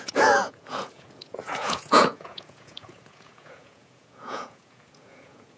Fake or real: fake